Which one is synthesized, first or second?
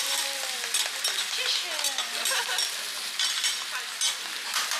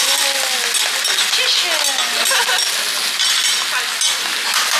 first